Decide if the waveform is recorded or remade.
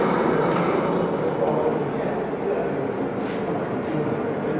recorded